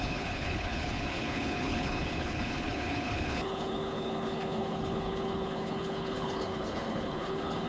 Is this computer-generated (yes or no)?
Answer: yes